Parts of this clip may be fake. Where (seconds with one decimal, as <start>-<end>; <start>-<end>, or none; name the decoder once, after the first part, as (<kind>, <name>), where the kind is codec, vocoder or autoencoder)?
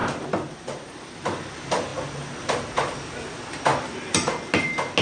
0.0-1.1 (vocoder, BigVGAN v2); 3.7-4.5